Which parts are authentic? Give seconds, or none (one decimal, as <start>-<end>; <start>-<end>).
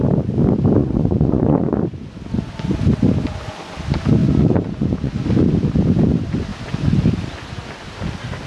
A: 0.0-0.8; 1.8-4.2; 5.1-8.5